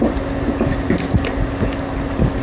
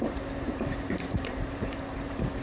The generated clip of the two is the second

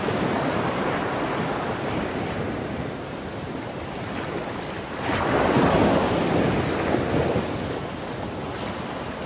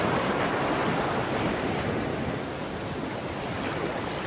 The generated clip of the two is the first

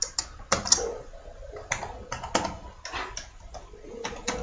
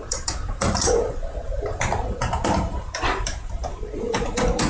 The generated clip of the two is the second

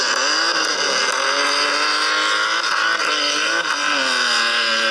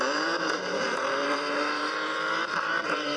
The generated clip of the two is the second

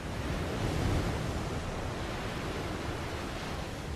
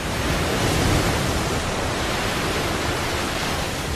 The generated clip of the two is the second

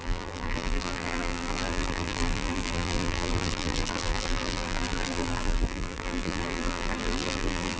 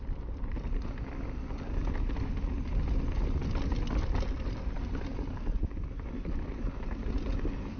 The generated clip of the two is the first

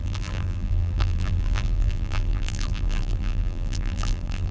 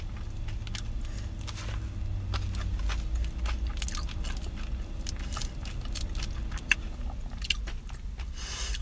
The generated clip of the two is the first